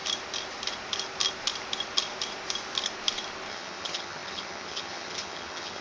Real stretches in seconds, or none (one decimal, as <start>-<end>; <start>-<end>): 0.0-3.5